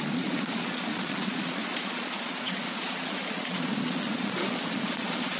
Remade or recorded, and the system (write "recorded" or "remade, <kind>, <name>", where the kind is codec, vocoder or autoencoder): remade, vocoder, Vocos